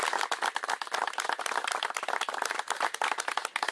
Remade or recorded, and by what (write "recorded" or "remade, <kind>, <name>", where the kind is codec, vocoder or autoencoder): recorded